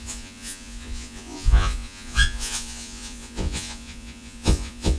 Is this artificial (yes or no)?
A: yes